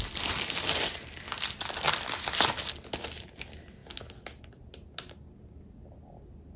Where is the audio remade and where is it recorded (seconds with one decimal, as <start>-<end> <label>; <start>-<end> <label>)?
0.0-6.6 recorded